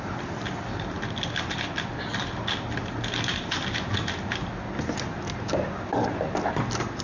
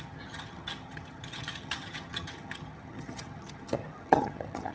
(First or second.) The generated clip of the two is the second